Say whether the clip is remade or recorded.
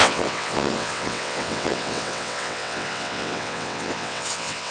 remade